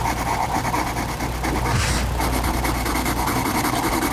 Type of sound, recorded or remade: recorded